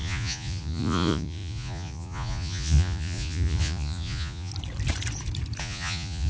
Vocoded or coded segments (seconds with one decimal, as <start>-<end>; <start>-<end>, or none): 0.0-4.5; 5.6-6.3